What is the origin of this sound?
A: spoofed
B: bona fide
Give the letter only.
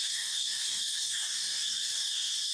A